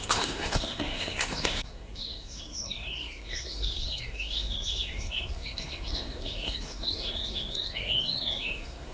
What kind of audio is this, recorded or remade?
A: remade